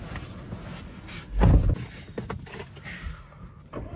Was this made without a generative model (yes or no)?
yes